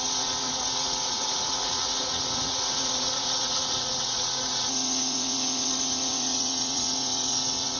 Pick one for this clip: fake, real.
fake